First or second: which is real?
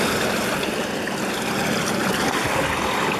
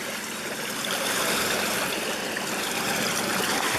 first